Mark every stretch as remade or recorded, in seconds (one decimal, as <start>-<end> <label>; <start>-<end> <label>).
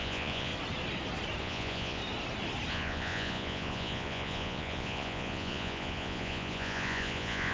0.0-0.5 remade; 0.5-1.4 recorded; 1.4-2.0 remade; 2.0-2.7 recorded; 2.7-7.5 remade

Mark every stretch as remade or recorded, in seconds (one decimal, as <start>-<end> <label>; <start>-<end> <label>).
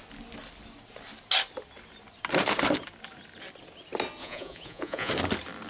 0.0-4.2 recorded; 4.2-5.1 remade; 5.1-5.7 recorded